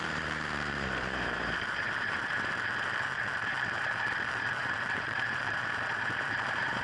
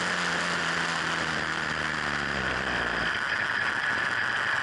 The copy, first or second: first